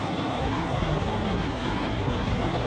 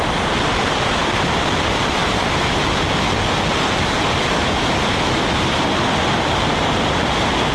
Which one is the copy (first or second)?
first